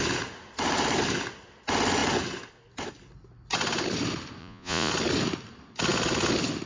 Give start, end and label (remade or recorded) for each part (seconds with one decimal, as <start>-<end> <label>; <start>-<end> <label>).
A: 0.0-4.4 recorded; 4.4-4.9 remade; 4.9-6.7 recorded